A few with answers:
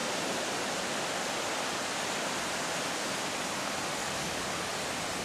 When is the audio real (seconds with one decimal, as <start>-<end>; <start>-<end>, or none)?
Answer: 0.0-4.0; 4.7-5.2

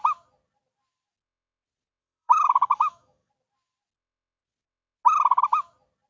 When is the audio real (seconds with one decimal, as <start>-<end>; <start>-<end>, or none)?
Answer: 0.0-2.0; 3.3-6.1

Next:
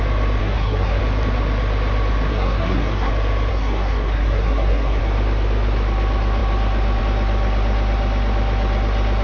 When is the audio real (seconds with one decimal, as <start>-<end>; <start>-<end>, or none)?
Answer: 0.0-0.4; 1.0-2.3; 3.1-3.5; 5.0-9.2

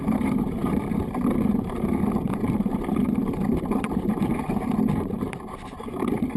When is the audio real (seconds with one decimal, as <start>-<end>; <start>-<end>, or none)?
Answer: none